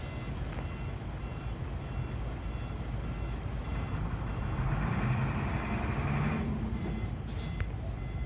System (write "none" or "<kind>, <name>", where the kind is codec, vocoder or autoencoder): none